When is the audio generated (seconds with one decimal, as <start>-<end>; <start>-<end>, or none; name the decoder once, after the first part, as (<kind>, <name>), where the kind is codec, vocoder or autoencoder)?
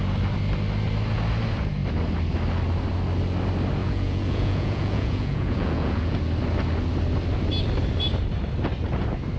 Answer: 3.8-6.2 (vocoder, Vocos)